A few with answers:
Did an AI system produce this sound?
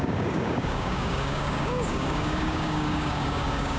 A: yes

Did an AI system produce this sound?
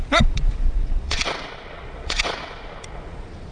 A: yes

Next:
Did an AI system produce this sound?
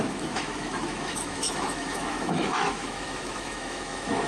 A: yes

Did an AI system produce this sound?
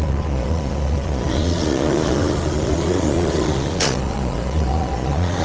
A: yes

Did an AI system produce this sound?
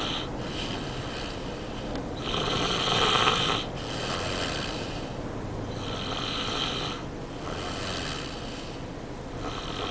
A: no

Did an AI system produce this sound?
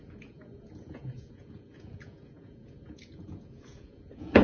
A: yes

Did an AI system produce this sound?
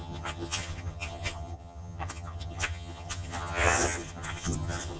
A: yes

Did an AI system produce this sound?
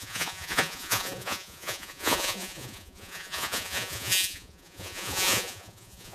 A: yes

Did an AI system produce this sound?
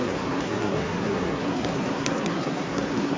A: yes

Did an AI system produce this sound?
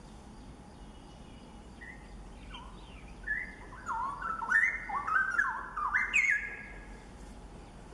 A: no